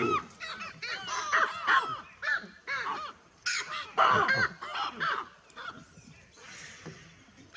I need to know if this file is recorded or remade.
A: recorded